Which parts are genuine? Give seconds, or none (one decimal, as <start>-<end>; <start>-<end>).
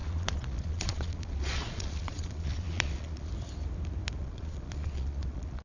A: 3.3-4.2